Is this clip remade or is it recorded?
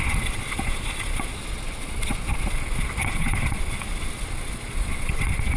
remade